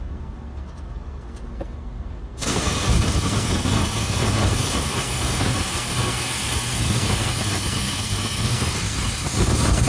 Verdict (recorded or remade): remade